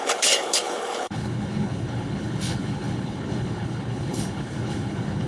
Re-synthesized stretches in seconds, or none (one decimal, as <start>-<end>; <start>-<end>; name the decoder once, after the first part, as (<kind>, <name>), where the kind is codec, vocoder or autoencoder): 0.0-5.3 (codec, HILCodec)